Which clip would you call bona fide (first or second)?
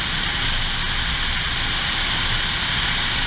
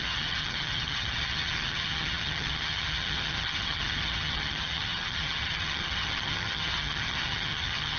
first